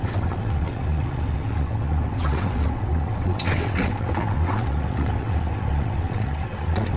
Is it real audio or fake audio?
fake